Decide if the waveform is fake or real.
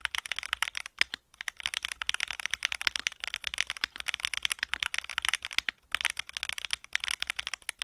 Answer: real